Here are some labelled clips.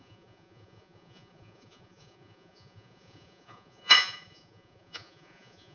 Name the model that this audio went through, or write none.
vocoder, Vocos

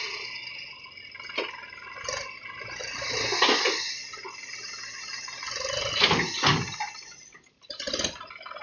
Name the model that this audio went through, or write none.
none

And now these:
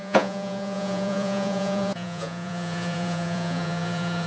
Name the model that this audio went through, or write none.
vocoder, Vocos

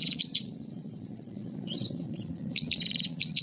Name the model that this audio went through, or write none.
vocoder, Vocos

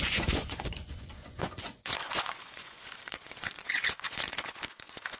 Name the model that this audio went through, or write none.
vocoder, Vocos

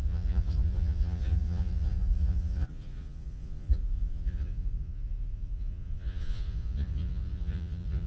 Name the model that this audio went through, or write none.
vocoder, Vocos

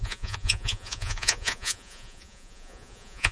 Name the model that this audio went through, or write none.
vocoder, Vocos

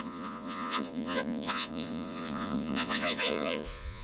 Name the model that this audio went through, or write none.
vocoder, Vocos